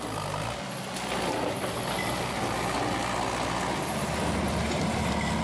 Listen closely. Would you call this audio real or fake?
real